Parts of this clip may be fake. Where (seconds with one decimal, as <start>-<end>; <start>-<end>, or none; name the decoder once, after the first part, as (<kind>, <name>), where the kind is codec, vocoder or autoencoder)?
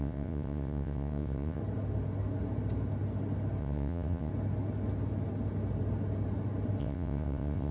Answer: 0.0-1.6 (vocoder, WaveNeXt); 3.6-4.3; 6.8-7.7